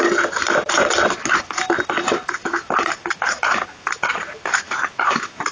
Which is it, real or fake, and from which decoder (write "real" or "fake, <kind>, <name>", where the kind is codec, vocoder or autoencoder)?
real